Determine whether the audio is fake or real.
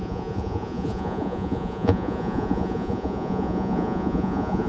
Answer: fake